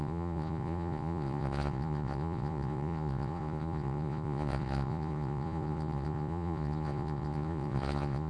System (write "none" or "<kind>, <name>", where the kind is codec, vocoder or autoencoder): vocoder, Vocos